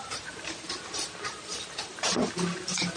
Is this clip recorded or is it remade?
recorded